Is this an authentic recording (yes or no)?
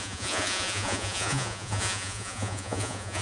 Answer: no